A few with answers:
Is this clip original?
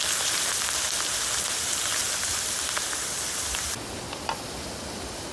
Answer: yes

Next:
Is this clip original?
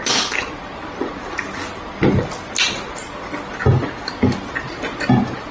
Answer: yes